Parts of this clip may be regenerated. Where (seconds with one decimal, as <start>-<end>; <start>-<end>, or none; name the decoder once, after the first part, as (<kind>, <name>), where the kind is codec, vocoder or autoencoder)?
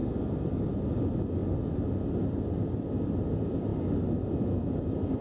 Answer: none